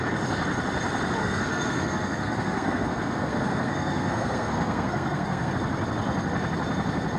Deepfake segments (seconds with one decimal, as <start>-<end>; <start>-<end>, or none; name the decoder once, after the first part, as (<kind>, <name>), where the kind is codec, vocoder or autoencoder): 1.2-5.5 (codec, SNAC)